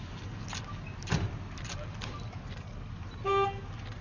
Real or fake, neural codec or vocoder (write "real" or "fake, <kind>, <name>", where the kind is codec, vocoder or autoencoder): real